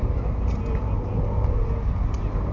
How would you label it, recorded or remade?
recorded